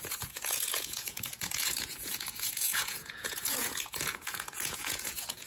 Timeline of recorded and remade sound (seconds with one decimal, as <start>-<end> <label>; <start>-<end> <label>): 0.0-5.5 remade